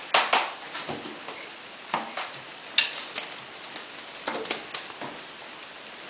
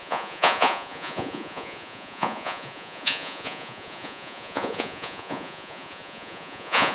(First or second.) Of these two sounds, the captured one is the first